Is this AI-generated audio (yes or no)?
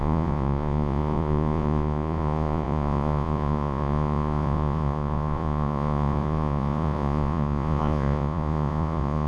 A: yes